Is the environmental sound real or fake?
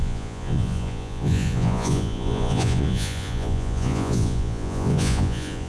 fake